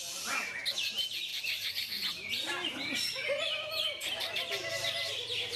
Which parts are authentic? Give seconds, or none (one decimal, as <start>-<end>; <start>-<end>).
0.0-1.3; 4.7-5.6